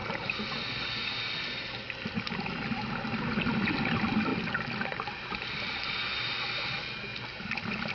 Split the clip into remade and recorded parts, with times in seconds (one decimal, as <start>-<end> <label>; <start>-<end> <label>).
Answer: 0.0-7.9 recorded